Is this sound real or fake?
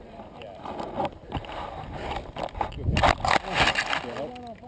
real